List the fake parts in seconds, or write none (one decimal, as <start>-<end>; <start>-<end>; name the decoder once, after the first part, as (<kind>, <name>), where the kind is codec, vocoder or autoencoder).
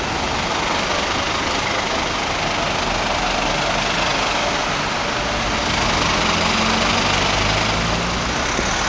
none